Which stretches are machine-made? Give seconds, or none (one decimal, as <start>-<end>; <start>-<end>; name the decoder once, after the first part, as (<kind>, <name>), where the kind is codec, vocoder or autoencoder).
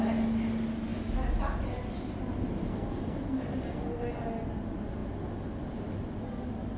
2.7-4.1 (codec, SNAC)